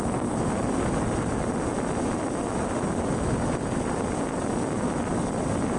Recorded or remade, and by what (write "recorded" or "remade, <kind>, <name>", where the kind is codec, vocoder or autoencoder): recorded